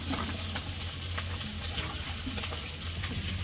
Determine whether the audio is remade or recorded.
recorded